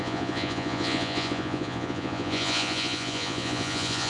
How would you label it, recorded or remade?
remade